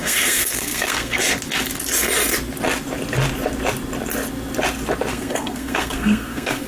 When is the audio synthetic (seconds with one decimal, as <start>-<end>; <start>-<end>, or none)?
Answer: 0.0-1.2; 5.1-6.7

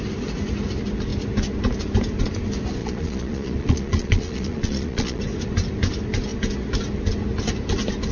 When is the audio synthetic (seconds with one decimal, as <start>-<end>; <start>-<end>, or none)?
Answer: 2.8-5.2